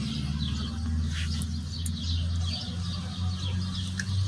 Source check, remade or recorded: recorded